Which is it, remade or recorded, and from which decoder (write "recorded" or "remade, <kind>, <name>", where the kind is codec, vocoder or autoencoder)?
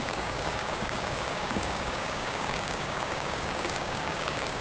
remade, codec, DAC